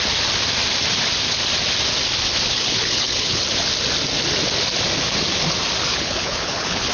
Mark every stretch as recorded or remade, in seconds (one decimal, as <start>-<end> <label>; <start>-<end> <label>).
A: 0.0-2.5 recorded; 2.5-3.4 remade; 3.4-5.9 recorded; 5.9-6.9 remade